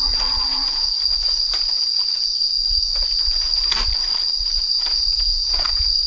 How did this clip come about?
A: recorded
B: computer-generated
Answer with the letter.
A